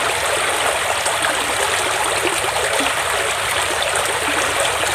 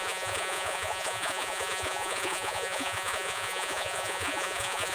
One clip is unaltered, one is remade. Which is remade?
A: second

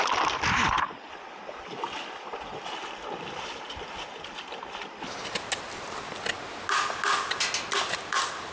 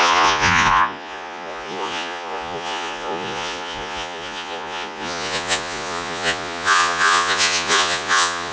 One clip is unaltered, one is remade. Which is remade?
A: second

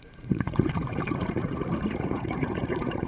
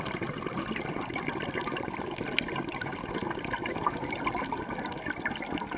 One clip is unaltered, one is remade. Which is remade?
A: first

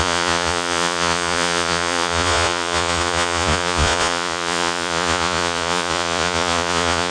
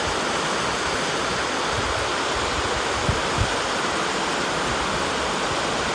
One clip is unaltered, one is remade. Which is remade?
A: first